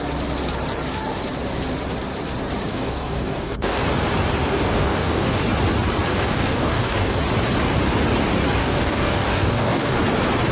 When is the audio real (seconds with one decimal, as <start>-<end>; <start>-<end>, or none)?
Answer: 0.0-2.7; 3.8-4.4; 5.4-6.1; 7.2-8.6; 10.0-10.5